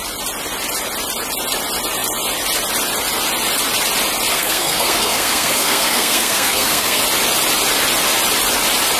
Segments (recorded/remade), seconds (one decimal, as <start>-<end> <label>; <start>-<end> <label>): 0.0-4.3 recorded; 4.3-7.0 remade; 7.0-9.0 recorded